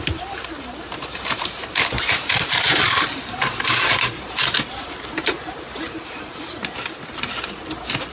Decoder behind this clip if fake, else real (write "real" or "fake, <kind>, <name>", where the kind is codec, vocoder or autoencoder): fake, vocoder, BigVGAN v2